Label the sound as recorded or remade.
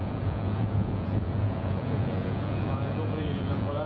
remade